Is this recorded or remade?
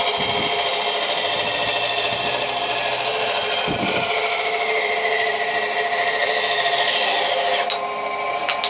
recorded